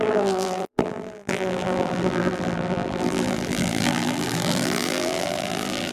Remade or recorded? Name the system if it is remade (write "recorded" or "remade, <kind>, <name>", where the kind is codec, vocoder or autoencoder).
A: remade, vocoder, BigVGAN v2